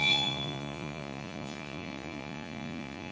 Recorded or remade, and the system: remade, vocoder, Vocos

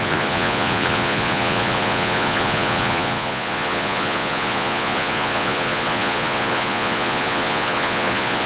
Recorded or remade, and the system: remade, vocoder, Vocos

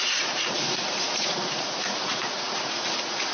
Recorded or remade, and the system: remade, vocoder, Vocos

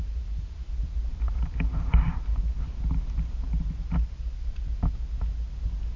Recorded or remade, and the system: recorded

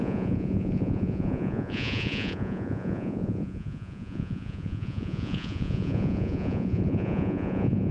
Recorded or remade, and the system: remade, vocoder, Vocos